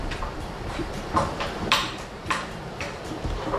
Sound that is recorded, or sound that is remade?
remade